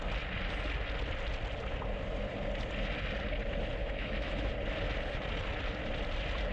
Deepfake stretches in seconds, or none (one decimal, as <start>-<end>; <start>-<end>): 3.8-4.5